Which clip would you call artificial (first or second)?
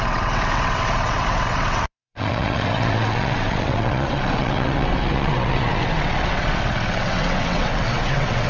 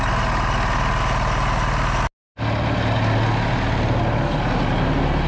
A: first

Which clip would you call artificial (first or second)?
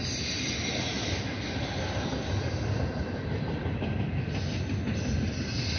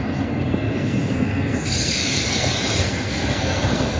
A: second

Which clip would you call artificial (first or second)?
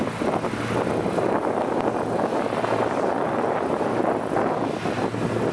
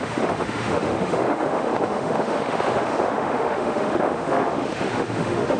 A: second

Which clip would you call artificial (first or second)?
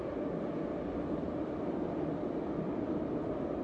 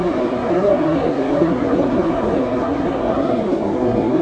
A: second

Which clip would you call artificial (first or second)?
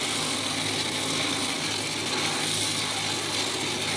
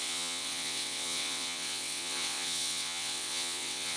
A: second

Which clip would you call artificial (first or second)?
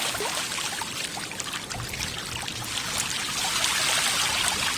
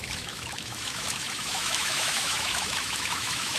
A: second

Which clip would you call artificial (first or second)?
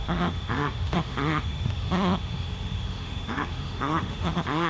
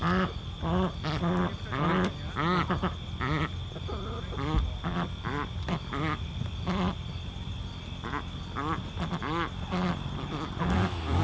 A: first